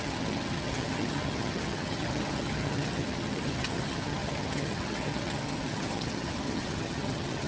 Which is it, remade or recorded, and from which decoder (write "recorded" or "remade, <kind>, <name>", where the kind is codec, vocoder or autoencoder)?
remade, vocoder, HiFi-GAN